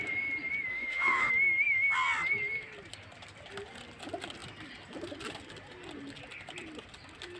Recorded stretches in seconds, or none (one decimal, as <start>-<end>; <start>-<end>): 0.0-0.7; 1.3-7.4